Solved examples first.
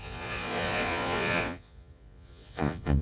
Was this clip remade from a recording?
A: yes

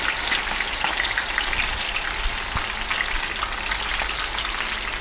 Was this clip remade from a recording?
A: no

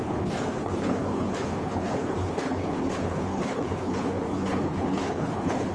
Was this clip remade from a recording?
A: yes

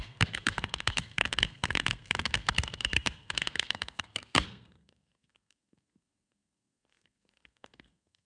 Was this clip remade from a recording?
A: yes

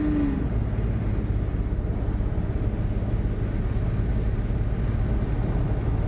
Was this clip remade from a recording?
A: no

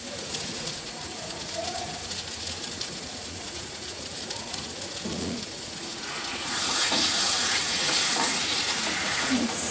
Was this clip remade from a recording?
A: yes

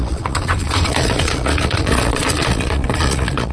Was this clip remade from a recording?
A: yes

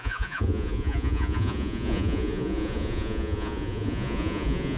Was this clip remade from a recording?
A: yes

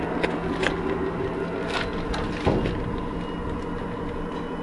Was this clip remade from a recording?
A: no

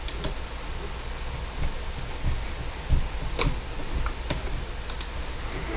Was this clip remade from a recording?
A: no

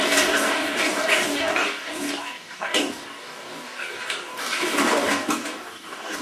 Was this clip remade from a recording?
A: yes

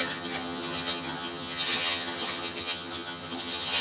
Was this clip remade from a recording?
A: yes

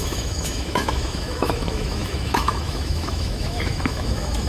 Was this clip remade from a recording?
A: yes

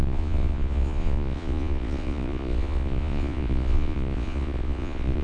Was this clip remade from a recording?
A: yes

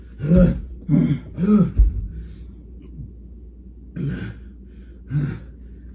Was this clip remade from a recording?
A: no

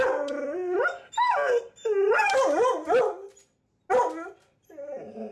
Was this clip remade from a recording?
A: no